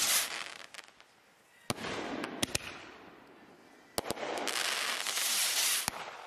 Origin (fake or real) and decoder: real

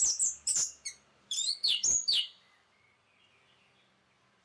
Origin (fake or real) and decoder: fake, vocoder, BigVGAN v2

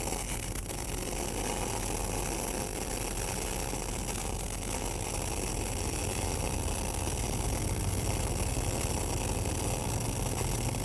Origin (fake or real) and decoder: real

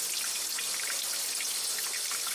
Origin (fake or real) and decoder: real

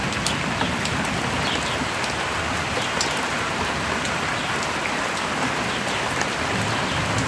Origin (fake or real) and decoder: real